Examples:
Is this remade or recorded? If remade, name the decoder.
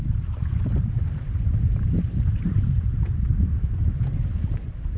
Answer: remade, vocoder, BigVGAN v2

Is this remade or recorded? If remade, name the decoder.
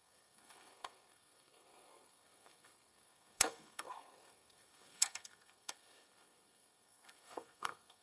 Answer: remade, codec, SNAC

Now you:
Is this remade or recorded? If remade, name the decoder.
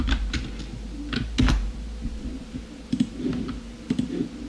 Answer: recorded